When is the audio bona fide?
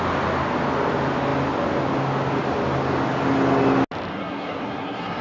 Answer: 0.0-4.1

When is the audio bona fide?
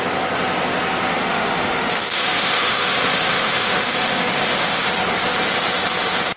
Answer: 0.0-1.1; 4.9-6.4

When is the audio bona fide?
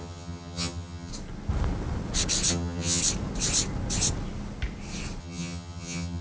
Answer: 1.1-2.5; 3.0-5.2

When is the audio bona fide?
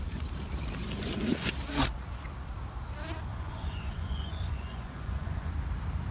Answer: 0.0-0.8; 1.5-3.3; 5.5-6.1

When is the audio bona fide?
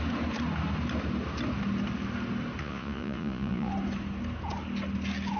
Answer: 0.0-2.6; 3.7-5.4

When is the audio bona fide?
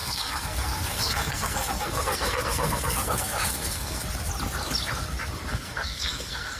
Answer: 4.0-5.5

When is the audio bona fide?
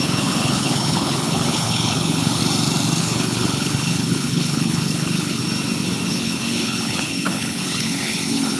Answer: 2.4-3.0; 5.4-6.1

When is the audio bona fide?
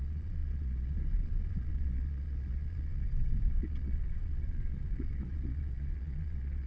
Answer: none